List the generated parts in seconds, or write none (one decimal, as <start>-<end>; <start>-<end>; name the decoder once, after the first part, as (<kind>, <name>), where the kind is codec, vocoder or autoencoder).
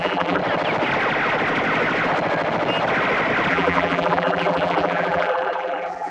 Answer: 0.0-0.4 (vocoder, BigVGAN v2); 3.5-6.1